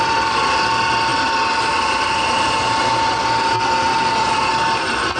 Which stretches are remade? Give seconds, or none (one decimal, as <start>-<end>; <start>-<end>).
none